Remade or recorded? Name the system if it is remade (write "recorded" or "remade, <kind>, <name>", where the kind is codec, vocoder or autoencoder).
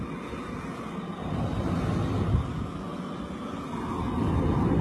recorded